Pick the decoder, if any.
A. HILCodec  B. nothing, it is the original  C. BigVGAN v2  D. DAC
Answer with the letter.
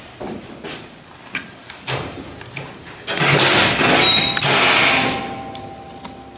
B